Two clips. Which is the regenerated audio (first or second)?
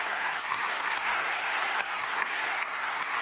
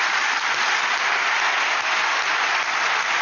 first